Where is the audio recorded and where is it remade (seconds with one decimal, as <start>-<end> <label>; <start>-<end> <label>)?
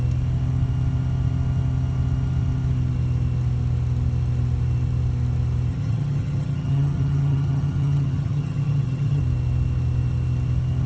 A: 0.0-5.7 recorded; 5.7-9.2 remade; 9.2-10.9 recorded